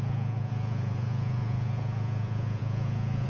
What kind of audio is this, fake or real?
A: fake